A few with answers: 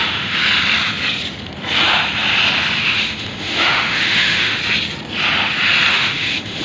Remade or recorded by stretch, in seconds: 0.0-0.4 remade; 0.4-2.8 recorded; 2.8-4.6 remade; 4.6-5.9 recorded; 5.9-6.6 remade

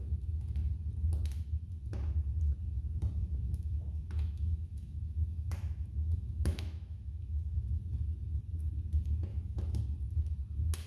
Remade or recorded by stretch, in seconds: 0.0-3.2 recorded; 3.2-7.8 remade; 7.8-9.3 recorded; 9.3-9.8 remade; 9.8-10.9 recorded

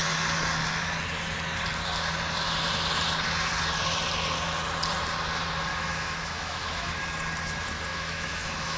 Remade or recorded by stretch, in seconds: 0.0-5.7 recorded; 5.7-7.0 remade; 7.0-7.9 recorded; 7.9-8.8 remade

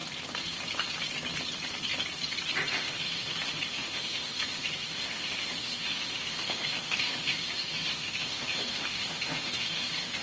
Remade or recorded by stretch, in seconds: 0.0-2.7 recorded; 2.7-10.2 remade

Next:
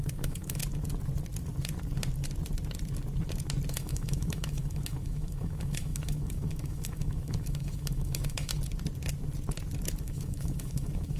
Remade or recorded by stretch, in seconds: 0.0-0.6 remade; 0.6-3.7 recorded; 3.7-8.5 remade; 8.5-10.0 recorded; 10.0-11.2 remade

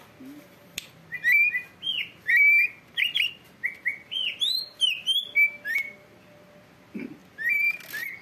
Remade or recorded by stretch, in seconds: 0.0-8.2 recorded